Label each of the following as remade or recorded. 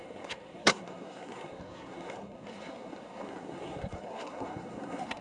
remade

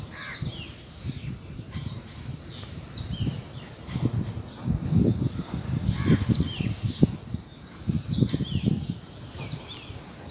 recorded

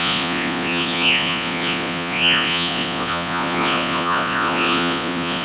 remade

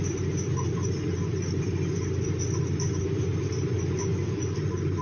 recorded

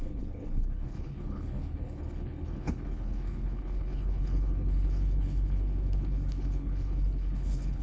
remade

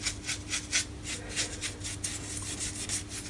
recorded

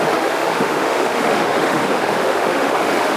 remade